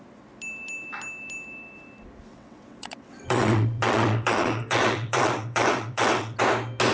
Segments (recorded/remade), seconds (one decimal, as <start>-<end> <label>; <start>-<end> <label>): 0.0-2.3 recorded; 2.3-6.4 remade; 6.4-6.9 recorded